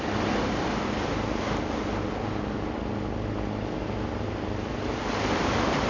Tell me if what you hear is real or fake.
real